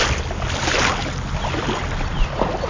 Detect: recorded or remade recorded